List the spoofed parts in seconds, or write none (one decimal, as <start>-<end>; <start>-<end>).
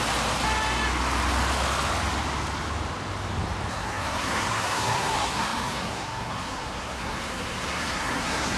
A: 3.7-8.6